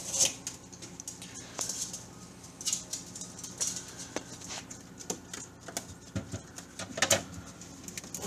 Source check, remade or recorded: recorded